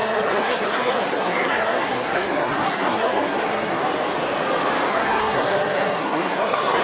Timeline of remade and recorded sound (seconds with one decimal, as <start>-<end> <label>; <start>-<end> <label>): 0.0-3.8 remade; 3.8-4.9 recorded; 4.9-6.8 remade